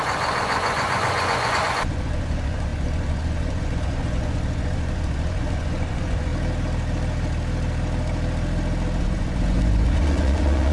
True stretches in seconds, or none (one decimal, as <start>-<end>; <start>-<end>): 6.3-9.0

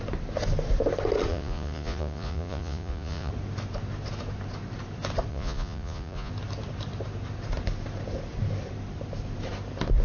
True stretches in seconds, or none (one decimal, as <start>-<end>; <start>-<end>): 0.0-1.3; 3.3-5.3; 6.3-10.0